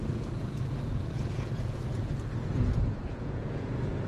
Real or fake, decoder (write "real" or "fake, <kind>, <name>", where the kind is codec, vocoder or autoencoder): fake, vocoder, Vocos